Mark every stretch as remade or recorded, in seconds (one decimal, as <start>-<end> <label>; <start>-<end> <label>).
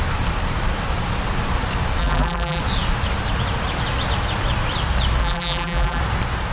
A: 0.0-2.0 recorded; 2.0-2.6 remade; 2.6-5.2 recorded; 5.2-6.0 remade; 6.0-6.5 recorded